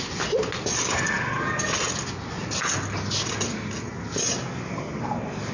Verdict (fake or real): real